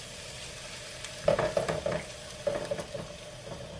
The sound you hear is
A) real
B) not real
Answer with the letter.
A